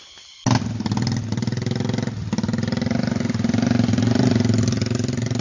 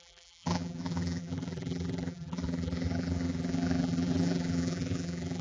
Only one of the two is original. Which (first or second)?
first